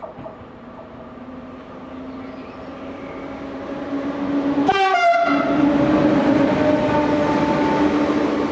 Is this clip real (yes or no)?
yes